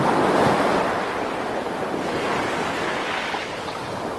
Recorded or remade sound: recorded